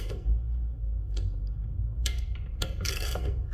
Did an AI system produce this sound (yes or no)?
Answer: yes